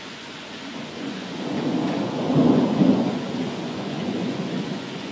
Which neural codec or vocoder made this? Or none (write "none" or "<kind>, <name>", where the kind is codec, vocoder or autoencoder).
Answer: vocoder, Vocos